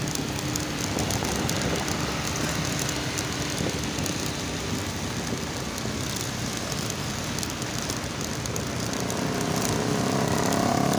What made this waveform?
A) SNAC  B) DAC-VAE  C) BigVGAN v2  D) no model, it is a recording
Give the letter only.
D